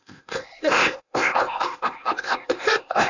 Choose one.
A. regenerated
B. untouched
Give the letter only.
A